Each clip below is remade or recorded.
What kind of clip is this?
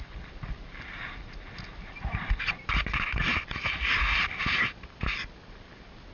recorded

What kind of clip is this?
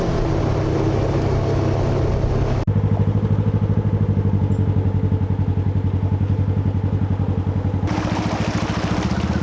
recorded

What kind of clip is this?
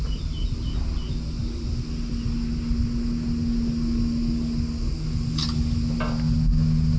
recorded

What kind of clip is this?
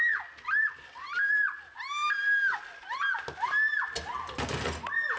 recorded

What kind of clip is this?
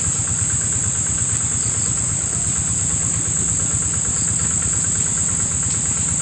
recorded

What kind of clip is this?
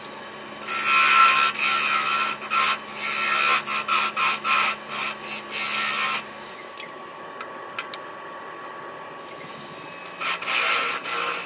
recorded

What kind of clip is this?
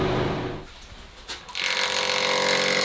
recorded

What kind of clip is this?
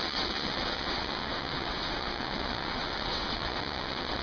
remade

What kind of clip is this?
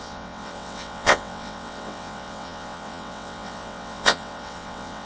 remade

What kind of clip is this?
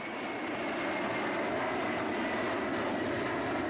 recorded